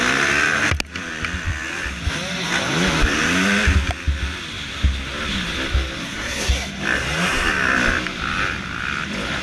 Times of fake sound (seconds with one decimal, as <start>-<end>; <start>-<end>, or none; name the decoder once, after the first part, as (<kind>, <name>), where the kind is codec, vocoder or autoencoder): 6.0-6.5 (codec, SNAC)